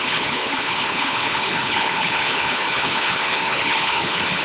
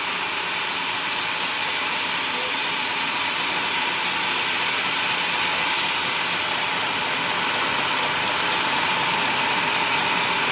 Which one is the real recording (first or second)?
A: second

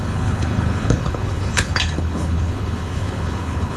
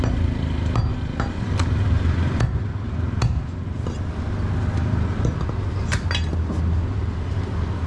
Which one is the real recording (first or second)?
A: second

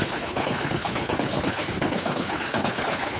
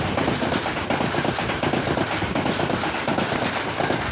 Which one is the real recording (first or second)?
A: second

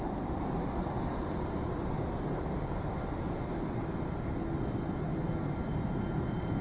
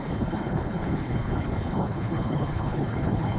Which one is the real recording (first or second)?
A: first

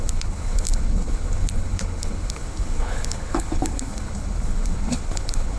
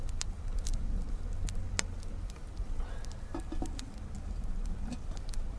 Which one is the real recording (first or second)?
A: second